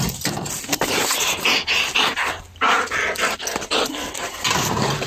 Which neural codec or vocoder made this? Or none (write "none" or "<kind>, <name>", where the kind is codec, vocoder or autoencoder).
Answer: none